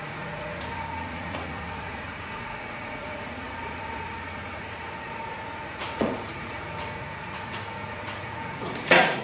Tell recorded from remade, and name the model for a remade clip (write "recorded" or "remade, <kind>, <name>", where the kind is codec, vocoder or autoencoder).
remade, vocoder, Vocos